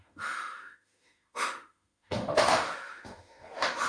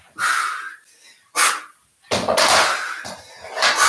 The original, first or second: second